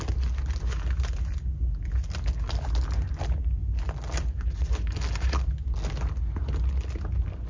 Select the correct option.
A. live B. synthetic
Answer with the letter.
A